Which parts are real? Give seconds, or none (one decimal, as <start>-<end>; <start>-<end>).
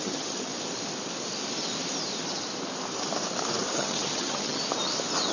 0.5-3.7; 4.6-5.3